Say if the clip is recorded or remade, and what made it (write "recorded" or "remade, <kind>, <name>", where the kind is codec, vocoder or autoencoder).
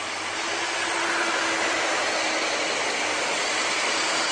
recorded